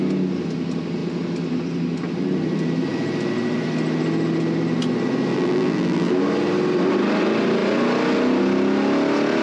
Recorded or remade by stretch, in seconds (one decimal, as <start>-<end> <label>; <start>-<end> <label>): 0.0-5.3 recorded; 5.3-6.1 remade; 6.1-9.4 recorded